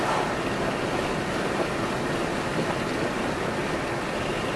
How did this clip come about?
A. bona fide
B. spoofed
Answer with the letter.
A